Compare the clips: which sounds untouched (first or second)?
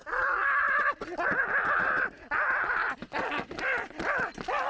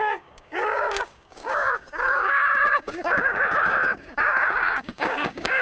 first